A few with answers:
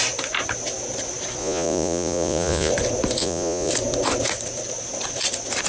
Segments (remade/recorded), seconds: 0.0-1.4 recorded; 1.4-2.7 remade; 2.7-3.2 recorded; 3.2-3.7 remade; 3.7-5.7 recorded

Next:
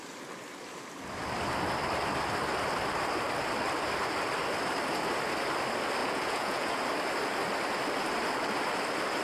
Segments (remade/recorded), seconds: 0.0-6.0 recorded; 6.0-6.8 remade; 6.8-9.2 recorded

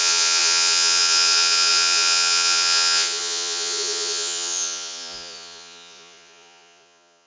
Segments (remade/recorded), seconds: 0.0-7.3 remade

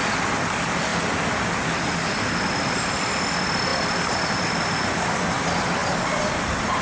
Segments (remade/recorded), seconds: 0.0-6.8 recorded

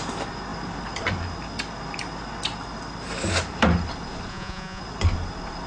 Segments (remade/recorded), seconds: 0.0-4.3 recorded; 4.3-4.8 remade; 4.8-5.7 recorded